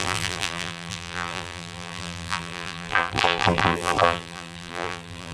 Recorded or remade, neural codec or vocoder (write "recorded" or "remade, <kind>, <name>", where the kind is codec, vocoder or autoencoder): remade, vocoder, BigVGAN v2